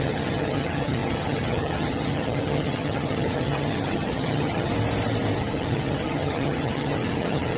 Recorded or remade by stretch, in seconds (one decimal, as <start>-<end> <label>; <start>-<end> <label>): 0.0-4.7 remade; 4.7-5.4 recorded; 5.4-7.6 remade

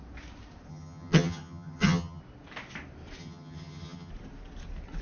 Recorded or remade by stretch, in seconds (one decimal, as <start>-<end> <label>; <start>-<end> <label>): 0.0-0.7 recorded; 0.7-2.2 remade; 2.2-3.2 recorded; 3.2-4.1 remade; 4.1-5.0 recorded